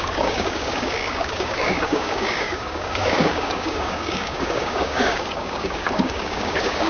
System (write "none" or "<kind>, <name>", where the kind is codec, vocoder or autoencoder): codec, DAC